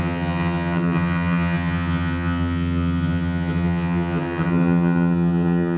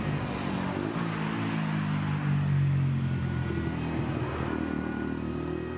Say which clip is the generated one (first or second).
first